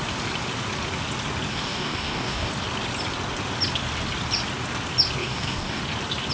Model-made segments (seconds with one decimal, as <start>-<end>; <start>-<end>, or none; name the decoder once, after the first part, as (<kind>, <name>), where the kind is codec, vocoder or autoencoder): 1.5-2.5 (codec, DAC); 5.2-5.8